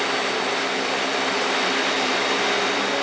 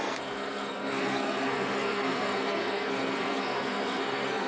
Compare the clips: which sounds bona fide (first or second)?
first